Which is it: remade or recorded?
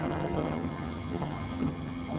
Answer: remade